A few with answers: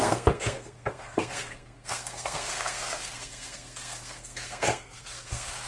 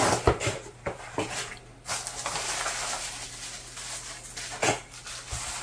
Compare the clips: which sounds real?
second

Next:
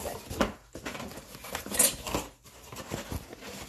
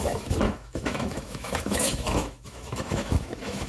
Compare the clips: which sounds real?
first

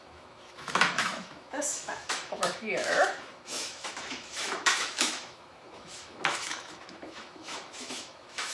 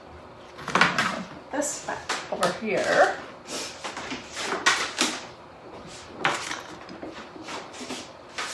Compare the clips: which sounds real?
second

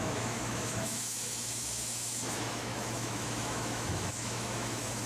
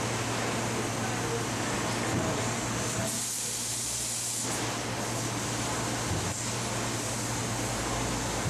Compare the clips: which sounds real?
second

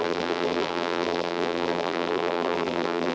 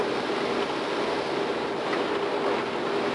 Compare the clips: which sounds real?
second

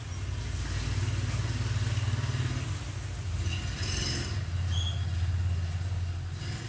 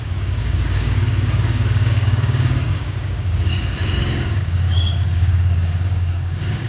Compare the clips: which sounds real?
first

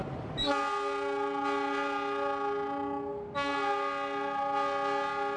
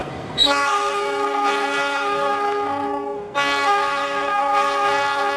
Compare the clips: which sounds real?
first